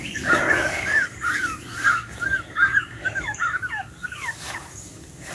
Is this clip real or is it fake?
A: fake